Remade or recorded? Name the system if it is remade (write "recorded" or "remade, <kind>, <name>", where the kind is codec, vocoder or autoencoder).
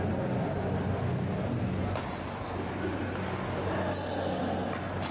recorded